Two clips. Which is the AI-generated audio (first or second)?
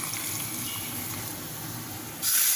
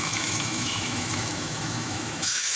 second